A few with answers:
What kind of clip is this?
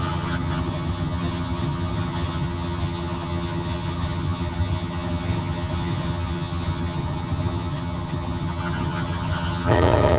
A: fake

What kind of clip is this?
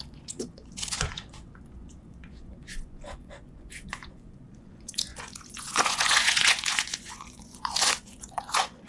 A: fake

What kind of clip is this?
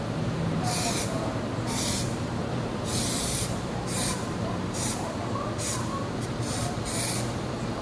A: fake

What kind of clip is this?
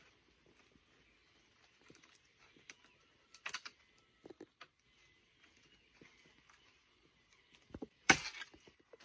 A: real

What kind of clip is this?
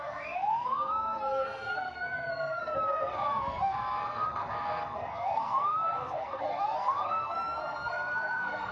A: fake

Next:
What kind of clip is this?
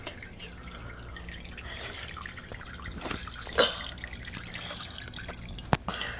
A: real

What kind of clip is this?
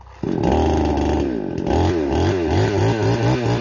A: real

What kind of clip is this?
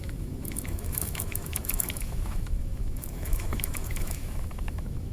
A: fake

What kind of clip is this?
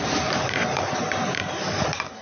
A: fake